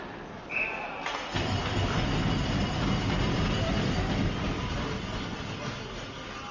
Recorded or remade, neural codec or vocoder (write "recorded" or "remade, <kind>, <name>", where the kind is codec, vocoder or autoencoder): recorded